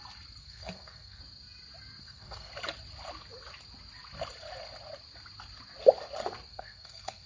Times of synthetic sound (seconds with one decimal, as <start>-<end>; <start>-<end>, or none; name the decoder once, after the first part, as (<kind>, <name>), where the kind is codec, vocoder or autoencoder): 0.4-1.2 (codec, SNAC); 2.0-2.5; 6.5-7.3